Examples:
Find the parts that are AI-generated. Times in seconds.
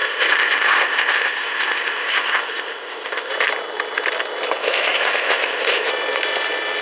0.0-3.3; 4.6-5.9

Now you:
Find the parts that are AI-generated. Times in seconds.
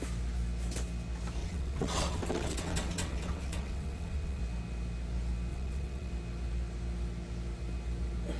1.4-4.4; 5.5-6.1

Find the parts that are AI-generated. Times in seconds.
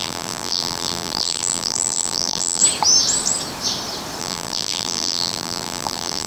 0.0-2.6; 4.2-6.3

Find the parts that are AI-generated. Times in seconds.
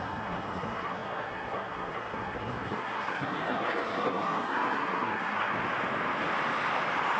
0.0-5.6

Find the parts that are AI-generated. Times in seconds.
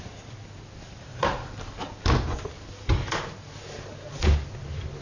1.1-1.7